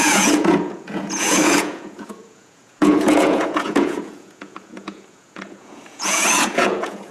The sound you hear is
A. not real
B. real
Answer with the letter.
A